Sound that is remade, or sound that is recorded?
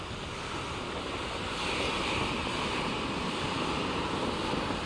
recorded